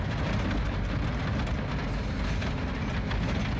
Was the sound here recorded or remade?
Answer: recorded